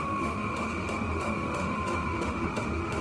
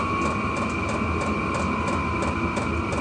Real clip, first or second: second